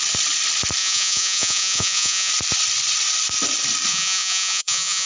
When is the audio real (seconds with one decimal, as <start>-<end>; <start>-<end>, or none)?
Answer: 0.0-0.8; 2.3-3.9